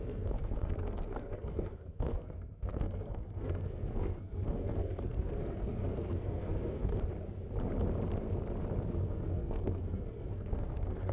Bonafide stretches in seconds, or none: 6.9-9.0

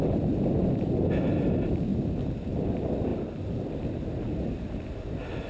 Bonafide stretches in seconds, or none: 1.9-2.5

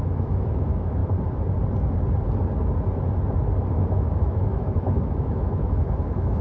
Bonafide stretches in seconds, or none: 1.0-3.7

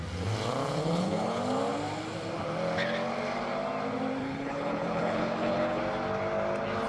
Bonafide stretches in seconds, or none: 0.0-0.8; 1.4-4.2; 5.8-6.9